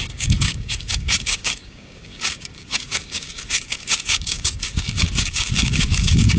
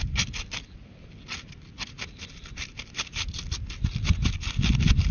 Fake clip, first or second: first